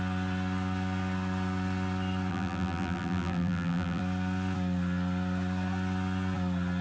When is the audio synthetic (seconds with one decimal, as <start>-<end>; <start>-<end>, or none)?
2.3-4.0